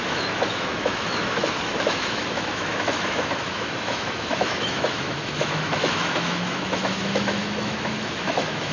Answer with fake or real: fake